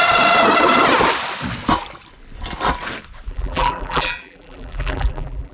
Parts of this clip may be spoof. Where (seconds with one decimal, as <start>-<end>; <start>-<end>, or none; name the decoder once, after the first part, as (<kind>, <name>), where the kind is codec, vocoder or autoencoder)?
3.3-5.5 (vocoder, BigVGAN v2)